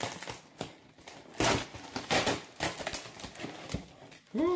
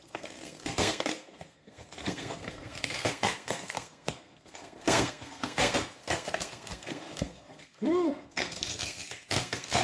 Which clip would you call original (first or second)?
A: first